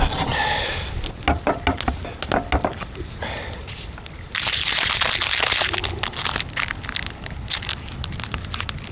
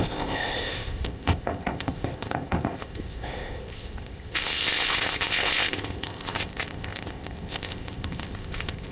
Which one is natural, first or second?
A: first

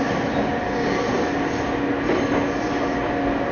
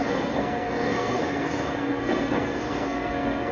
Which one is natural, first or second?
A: first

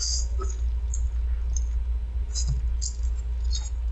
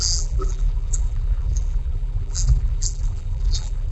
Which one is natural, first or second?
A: first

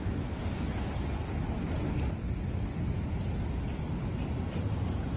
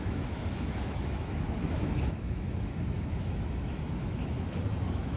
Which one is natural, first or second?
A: first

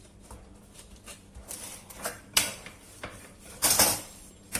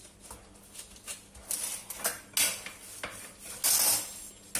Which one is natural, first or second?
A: second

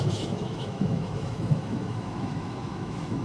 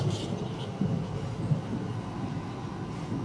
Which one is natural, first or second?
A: second